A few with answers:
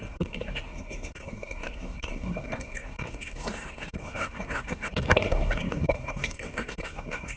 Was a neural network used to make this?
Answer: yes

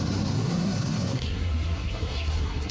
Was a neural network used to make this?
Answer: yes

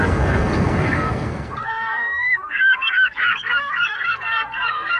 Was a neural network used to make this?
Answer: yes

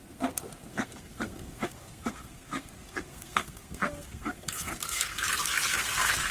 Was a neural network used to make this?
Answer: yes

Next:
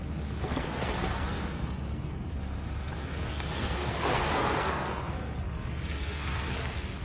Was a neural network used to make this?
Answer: yes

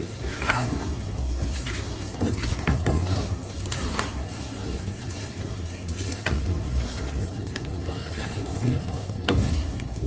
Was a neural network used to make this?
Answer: yes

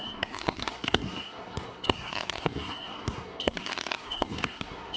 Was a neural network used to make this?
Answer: yes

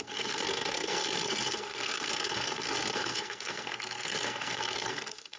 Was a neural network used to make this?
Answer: yes